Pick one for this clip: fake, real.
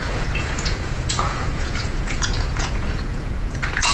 fake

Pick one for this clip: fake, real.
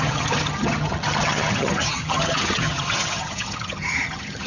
fake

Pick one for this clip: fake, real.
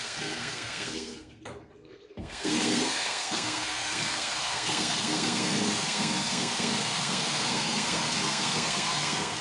fake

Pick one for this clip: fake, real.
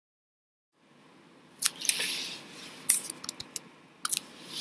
real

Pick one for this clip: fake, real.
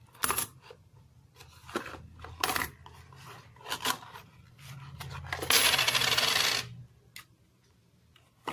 real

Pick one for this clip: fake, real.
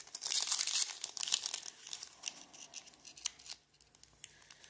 real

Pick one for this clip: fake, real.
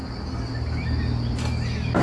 real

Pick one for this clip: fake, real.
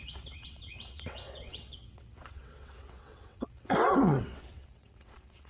fake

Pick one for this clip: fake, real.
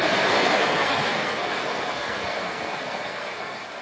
fake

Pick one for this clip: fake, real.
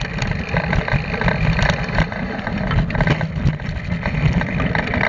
real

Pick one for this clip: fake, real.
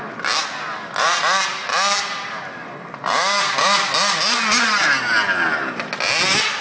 real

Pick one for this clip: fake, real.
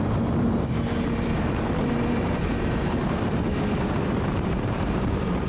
fake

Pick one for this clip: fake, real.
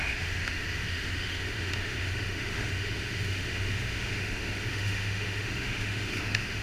fake